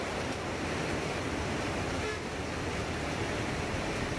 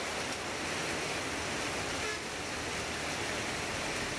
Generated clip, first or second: first